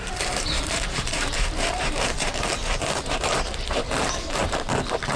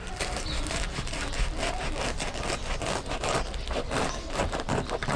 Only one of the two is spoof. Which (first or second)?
first